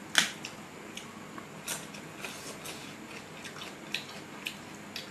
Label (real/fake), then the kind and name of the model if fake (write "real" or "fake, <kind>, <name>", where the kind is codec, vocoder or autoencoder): real